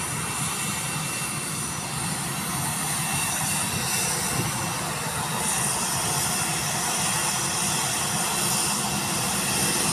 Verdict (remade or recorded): recorded